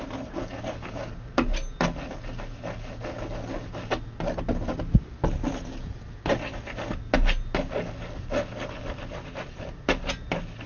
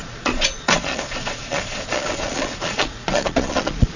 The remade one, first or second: second